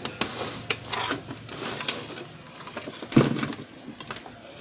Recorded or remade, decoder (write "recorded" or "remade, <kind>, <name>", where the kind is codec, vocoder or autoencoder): recorded